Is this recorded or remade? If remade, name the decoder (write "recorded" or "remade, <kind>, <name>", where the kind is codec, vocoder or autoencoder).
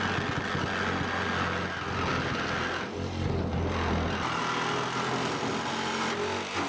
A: recorded